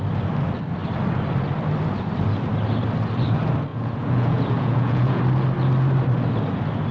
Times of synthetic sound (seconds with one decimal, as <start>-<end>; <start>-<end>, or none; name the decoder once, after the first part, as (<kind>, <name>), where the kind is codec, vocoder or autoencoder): 3.7-5.2 (vocoder, Vocos)